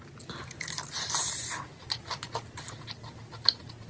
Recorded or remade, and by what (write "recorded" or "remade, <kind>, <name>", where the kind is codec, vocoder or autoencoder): recorded